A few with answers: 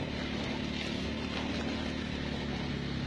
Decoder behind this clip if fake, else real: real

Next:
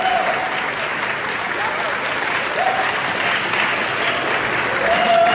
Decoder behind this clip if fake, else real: real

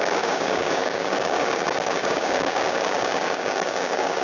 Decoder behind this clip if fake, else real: fake, codec, DAC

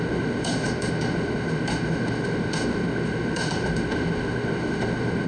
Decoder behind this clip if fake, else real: fake, autoencoder, DAC-VAE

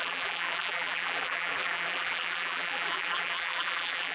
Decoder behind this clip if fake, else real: fake, vocoder, BigVGAN v2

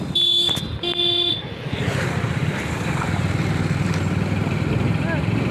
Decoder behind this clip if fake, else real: real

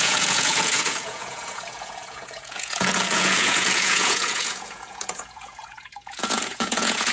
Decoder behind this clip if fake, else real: fake, vocoder, Vocos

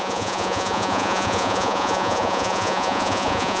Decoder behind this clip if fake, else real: fake, vocoder, Vocos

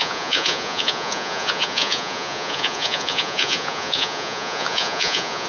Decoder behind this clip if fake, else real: fake, vocoder, Vocos